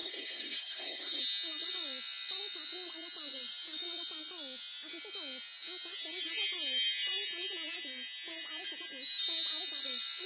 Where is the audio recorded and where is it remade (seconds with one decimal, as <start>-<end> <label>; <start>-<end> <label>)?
0.0-1.2 remade; 1.2-10.3 recorded